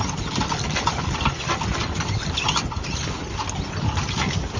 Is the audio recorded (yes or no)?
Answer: yes